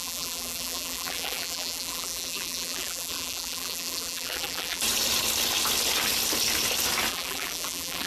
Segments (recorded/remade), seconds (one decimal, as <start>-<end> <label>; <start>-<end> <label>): 0.0-4.8 remade; 4.8-7.1 recorded; 7.1-8.1 remade